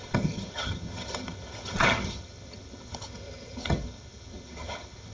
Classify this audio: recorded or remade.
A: remade